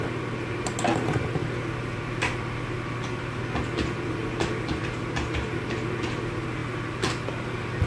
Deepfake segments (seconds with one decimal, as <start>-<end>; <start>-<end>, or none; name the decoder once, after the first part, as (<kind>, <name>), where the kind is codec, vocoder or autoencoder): none